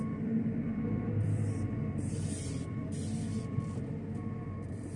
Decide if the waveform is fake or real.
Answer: fake